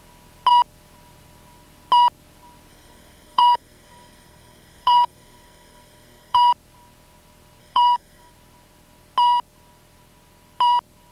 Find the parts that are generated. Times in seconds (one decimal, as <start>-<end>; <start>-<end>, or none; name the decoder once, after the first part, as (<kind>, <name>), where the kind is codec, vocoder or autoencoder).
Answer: 2.7-6.5 (codec, SNAC); 7.6-8.3

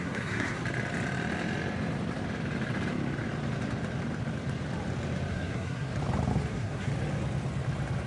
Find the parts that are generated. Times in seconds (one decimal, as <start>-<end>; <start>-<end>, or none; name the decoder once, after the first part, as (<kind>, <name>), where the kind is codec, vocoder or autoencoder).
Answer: 0.0-0.6 (codec, SNAC); 5.3-5.9; 6.5-6.9

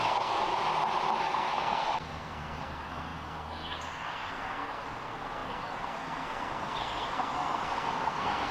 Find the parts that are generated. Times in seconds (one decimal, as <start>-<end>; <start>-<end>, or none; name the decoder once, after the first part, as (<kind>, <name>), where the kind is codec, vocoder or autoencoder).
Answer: 0.0-0.5 (codec, SNAC); 1.2-8.5

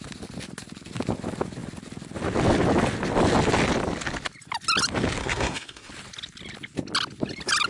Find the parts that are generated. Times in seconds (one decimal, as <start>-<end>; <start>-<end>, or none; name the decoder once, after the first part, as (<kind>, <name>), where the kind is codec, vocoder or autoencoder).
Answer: 5.2-5.9 (codec, SNAC)

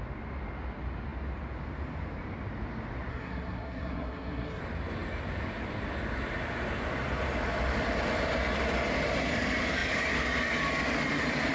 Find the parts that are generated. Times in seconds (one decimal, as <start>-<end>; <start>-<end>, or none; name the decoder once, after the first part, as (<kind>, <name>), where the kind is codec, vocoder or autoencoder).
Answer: 3.1-4.6 (codec, SNAC)